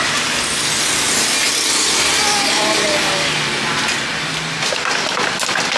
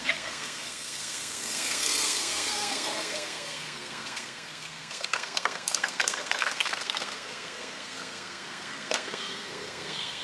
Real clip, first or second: first